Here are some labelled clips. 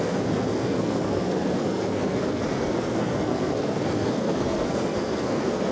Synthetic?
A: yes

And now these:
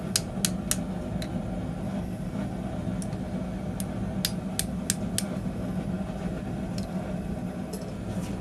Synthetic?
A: no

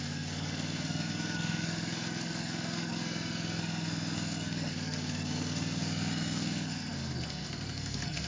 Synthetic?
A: yes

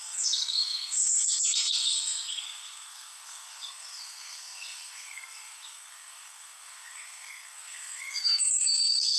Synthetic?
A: yes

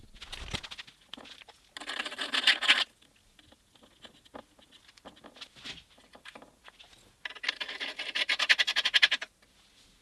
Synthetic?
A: no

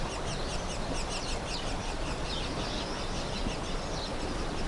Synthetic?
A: no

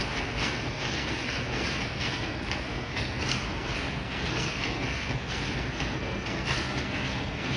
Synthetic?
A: yes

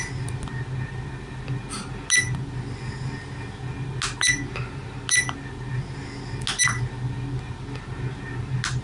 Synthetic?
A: no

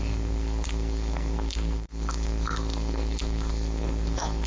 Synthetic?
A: yes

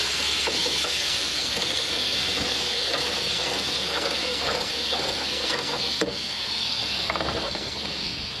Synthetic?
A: yes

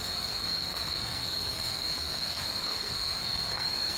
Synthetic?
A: yes